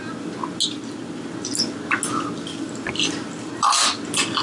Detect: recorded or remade recorded